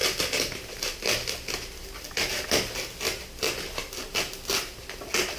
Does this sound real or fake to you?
real